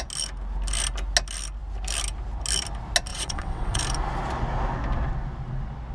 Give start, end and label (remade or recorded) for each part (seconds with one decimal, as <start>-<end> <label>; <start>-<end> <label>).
0.0-3.1 recorded; 3.1-3.8 remade; 3.8-5.9 recorded